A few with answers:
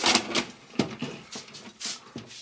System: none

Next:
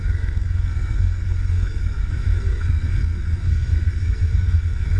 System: codec, SNAC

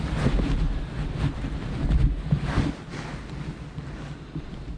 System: none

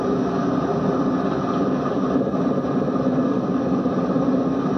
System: none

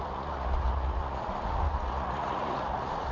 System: vocoder, Vocos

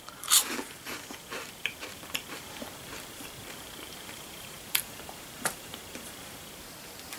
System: vocoder, BigVGAN v2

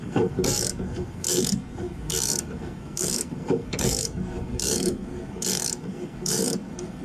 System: codec, SNAC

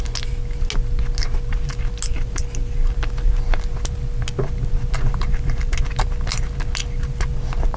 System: none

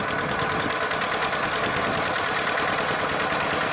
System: none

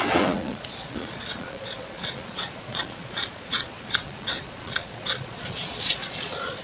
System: vocoder, Vocos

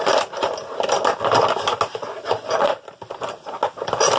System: none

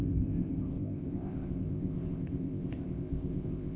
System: codec, ZipCodec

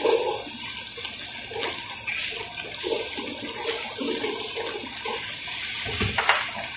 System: none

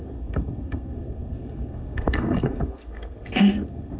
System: codec, SNAC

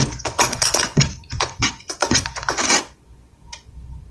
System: vocoder, Vocos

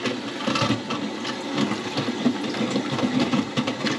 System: none